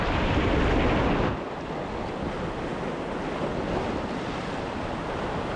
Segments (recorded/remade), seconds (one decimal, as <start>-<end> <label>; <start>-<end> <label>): 0.0-5.6 recorded